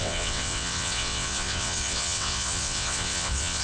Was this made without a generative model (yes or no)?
no